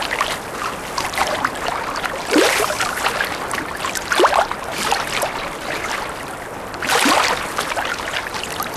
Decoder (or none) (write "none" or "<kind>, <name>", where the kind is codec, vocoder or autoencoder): none